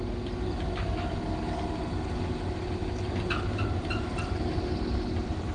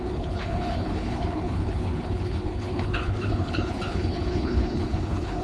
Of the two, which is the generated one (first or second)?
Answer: second